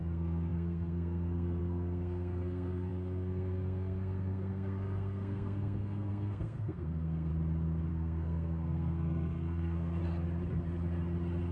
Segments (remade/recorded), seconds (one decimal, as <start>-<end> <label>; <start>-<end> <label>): 0.0-7.3 remade; 7.3-7.9 recorded; 7.9-10.0 remade; 10.0-11.5 recorded